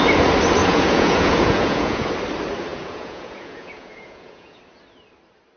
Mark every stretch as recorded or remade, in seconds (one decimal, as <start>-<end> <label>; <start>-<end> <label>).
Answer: 0.0-0.6 recorded; 0.6-2.1 remade; 2.1-2.7 recorded; 2.7-4.6 remade; 4.6-5.6 recorded